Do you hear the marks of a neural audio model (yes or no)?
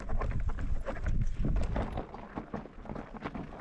no